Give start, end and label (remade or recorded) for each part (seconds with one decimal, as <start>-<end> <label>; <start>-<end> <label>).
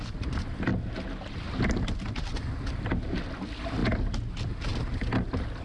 0.0-0.7 remade; 0.7-3.3 recorded; 3.3-3.8 remade; 3.8-4.3 recorded; 4.3-4.7 remade; 4.7-5.6 recorded